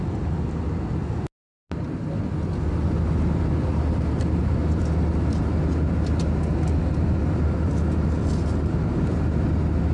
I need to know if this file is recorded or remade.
recorded